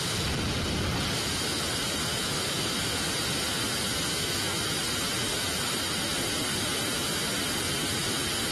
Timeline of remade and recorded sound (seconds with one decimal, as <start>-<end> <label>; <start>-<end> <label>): 0.0-2.1 recorded; 2.1-3.1 remade; 3.1-4.1 recorded; 4.1-4.7 remade; 4.7-5.3 recorded; 5.3-6.2 remade; 6.2-8.5 recorded

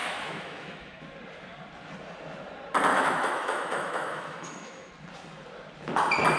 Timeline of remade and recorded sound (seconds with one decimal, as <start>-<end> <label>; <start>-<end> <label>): 0.0-1.0 remade; 1.0-2.9 recorded; 2.9-4.9 remade; 4.9-6.4 recorded

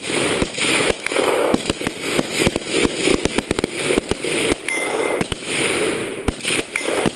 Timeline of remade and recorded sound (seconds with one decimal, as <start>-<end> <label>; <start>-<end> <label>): 0.0-3.1 remade; 3.1-4.7 recorded; 4.7-6.0 remade; 6.0-6.6 recorded; 6.6-7.2 remade

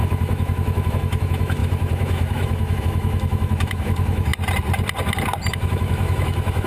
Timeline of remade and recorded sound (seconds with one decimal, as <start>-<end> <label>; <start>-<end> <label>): 0.0-4.3 remade; 4.3-5.5 recorded; 5.5-6.7 remade

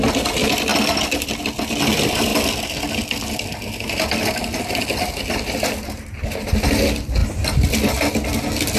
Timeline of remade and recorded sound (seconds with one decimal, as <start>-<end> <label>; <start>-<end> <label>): 0.0-8.8 recorded